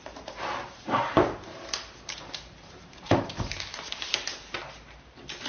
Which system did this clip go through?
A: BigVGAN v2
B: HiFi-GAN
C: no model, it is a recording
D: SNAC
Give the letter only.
A